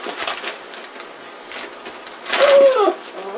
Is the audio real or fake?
real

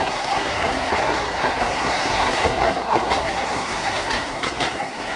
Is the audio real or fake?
fake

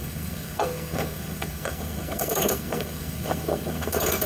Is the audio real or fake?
fake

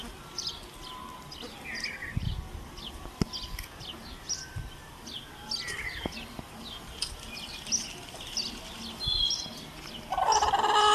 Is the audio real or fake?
real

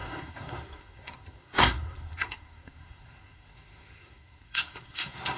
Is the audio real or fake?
fake